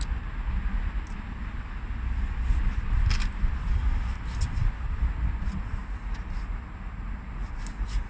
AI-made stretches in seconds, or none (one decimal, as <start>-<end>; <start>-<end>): none